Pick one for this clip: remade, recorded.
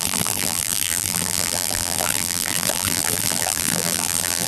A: remade